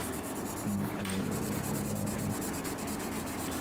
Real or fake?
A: real